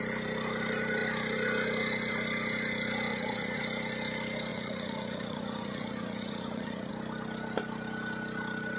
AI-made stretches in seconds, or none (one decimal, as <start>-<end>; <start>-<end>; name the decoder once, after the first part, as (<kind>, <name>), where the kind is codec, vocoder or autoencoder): 3.1-3.6 (vocoder, Vocos); 4.5-6.9